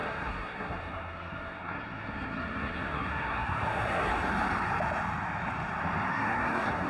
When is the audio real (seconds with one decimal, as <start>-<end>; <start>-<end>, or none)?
4.1-6.1